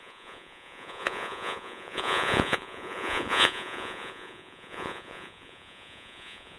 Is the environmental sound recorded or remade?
remade